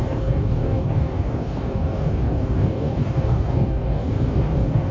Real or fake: fake